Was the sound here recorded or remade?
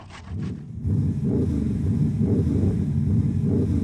recorded